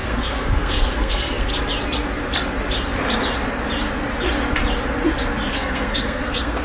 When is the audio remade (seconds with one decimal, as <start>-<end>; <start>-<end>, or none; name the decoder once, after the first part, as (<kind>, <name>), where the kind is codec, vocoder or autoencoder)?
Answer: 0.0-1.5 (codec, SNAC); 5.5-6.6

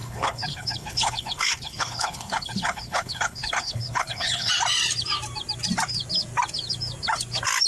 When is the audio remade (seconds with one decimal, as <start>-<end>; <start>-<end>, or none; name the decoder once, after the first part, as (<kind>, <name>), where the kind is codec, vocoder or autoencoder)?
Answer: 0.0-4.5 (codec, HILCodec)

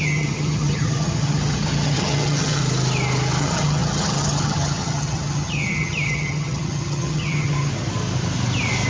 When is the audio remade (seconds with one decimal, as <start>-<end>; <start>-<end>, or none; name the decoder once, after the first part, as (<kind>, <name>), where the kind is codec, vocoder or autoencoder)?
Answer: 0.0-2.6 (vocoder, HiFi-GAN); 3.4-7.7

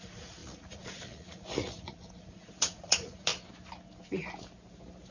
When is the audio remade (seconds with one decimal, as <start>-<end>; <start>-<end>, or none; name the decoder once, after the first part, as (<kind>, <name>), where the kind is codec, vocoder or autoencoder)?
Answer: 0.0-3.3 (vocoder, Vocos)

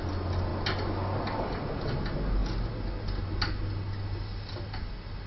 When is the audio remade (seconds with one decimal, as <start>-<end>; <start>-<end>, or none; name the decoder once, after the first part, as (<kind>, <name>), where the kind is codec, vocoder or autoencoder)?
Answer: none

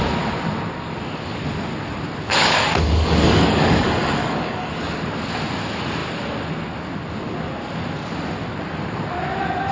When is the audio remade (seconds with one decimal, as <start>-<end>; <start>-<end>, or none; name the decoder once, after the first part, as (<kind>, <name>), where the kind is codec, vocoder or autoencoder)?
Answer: 2.4-4.7 (codec, DAC)

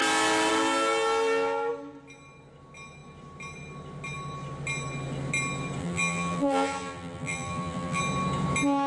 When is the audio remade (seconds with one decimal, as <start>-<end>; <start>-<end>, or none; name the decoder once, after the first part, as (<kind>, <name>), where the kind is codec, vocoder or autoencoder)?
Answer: 5.8-8.0 (vocoder, BigVGAN v2)